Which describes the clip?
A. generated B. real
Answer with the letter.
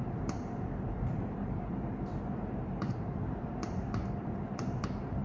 A